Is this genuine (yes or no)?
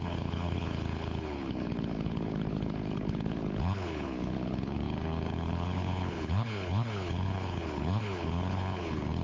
no